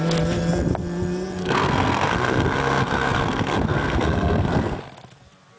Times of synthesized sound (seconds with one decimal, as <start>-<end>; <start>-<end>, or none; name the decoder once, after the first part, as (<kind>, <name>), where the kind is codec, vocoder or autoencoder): 1.4-4.8 (codec, SNAC)